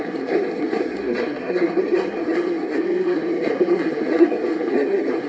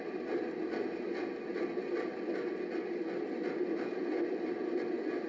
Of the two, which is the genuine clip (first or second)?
second